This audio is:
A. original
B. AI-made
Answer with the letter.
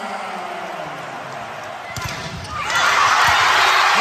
A